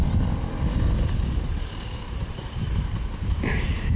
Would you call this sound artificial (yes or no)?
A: yes